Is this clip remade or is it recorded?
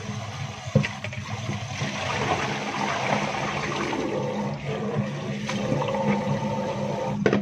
recorded